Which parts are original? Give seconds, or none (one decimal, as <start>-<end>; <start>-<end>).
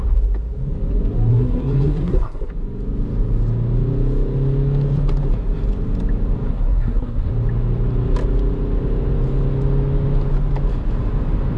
0.0-1.3; 2.5-6.5; 7.3-11.6